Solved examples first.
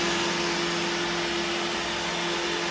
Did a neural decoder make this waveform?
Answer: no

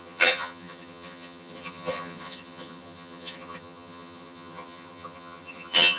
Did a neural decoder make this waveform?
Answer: yes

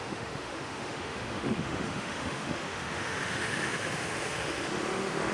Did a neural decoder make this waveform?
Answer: yes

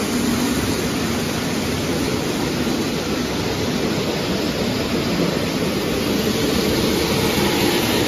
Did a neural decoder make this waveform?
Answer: no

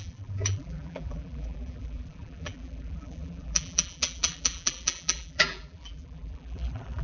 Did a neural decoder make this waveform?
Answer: yes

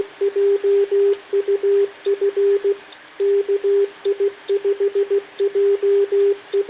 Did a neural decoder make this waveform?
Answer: no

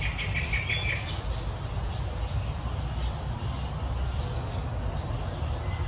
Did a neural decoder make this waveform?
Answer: no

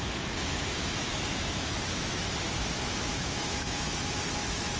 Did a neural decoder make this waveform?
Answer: yes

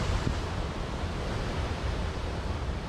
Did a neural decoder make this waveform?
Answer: no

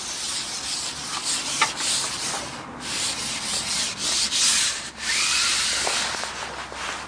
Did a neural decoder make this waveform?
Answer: no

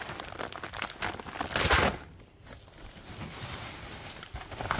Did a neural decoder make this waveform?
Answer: no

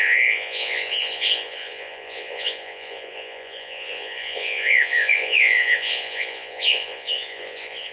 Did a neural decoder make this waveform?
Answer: yes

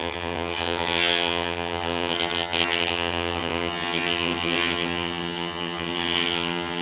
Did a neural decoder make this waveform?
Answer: yes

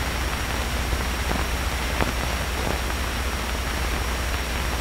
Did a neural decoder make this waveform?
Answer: no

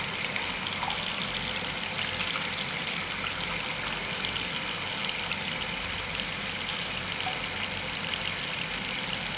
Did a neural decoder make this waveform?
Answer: no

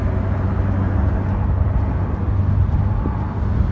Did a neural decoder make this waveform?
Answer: no